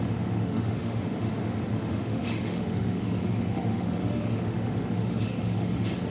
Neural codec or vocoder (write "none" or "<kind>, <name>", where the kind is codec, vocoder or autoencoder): autoencoder, DAC-VAE